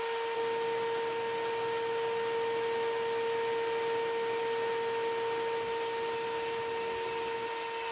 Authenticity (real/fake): real